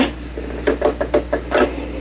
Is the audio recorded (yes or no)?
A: yes